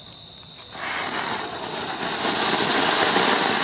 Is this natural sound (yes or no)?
yes